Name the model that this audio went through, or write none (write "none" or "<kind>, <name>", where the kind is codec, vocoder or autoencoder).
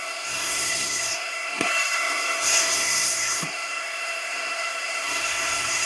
codec, SNAC